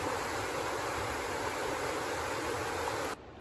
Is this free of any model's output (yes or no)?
yes